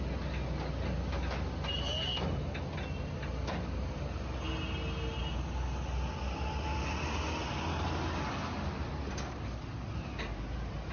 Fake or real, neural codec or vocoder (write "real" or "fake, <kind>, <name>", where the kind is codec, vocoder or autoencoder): real